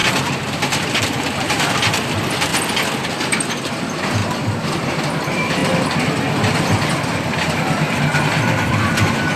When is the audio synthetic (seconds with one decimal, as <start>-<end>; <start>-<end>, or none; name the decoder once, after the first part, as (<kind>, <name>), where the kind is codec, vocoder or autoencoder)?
0.0-4.2 (vocoder, BigVGAN v2); 5.0-5.6; 6.3-9.4